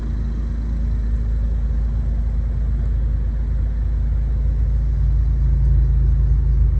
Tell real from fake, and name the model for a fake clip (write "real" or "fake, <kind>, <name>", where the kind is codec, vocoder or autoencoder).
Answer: real